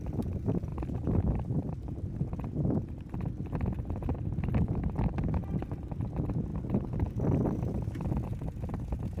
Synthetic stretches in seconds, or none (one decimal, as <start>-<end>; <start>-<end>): none